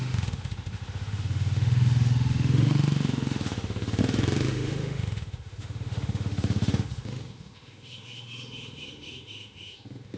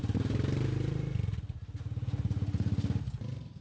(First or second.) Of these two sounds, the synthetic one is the first